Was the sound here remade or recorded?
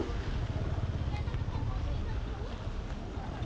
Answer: recorded